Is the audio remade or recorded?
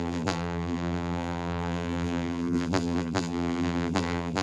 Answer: remade